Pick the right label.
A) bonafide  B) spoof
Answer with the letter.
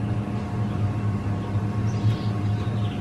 A